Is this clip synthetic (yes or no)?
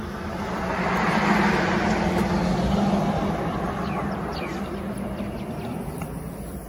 no